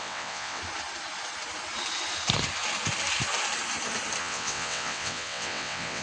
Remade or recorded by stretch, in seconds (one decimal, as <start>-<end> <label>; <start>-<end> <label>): 0.0-0.6 remade; 0.6-4.2 recorded; 4.2-6.0 remade